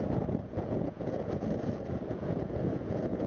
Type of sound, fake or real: fake